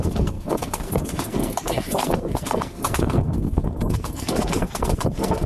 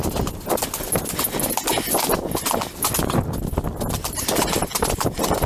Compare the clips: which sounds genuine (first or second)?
second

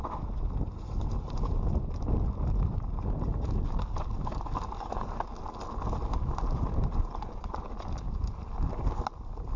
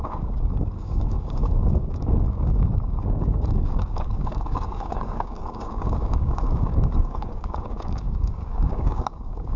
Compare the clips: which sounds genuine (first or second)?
first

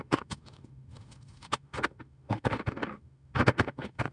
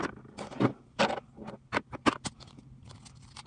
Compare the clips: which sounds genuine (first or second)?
second